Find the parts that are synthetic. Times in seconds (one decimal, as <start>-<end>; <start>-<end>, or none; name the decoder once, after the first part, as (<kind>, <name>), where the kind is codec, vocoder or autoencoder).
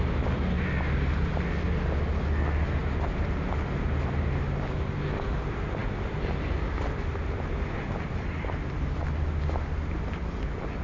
none